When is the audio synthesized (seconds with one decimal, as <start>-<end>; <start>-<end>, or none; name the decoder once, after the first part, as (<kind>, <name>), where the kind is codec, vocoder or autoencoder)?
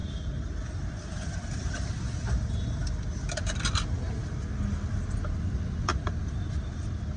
0.0-4.0 (vocoder, BigVGAN v2)